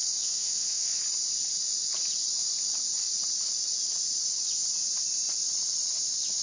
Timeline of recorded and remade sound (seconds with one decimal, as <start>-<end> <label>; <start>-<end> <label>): 0.0-1.0 remade; 1.0-6.4 recorded